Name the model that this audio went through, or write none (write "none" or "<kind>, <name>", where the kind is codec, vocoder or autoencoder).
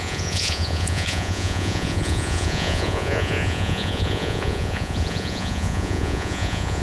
vocoder, Vocos